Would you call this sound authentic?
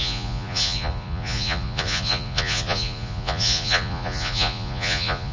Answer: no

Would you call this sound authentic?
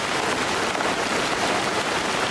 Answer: yes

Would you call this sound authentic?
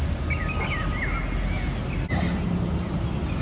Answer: yes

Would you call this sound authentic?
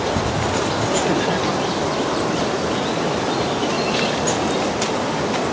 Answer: yes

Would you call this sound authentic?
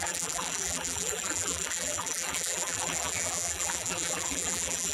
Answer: no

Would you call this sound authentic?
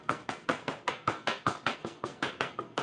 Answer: no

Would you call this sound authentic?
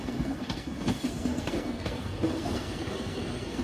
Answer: no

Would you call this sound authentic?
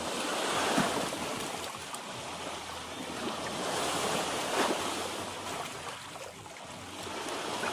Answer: yes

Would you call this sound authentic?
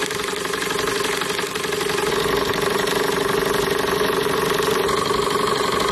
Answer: yes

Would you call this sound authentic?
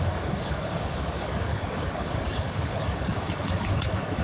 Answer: no